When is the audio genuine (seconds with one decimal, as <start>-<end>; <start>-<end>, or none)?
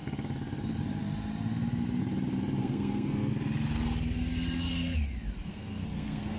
0.0-2.6; 3.3-5.5